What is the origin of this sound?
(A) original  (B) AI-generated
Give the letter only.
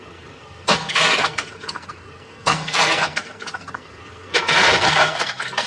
B